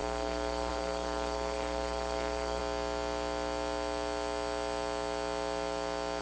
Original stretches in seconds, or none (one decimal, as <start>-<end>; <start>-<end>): 2.6-6.2